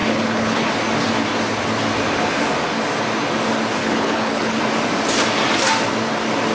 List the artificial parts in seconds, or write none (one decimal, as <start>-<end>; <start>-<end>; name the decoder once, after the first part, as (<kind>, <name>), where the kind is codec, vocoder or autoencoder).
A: 0.0-0.7 (codec, HILCodec); 3.8-4.6